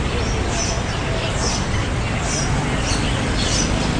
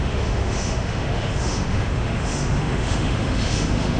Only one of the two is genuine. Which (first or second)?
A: first